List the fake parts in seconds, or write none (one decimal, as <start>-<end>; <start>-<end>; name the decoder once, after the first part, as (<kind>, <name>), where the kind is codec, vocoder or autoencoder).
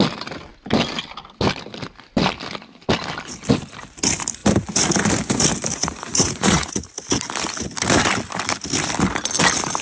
5.7-6.9 (vocoder, Vocos)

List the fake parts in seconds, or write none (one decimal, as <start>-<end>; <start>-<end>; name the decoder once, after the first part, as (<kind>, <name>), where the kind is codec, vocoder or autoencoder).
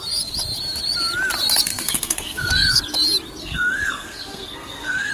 1.7-2.8 (codec, SNAC); 3.4-5.1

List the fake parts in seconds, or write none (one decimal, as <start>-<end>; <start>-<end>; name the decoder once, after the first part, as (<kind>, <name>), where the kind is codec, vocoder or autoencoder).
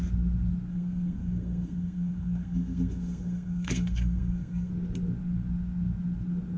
0.7-4.7 (codec, SNAC)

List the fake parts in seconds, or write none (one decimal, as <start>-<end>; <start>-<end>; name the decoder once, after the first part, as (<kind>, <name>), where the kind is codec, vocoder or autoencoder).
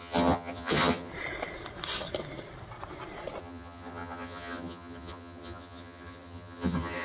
0.0-1.1 (vocoder, HiFi-GAN); 3.4-7.0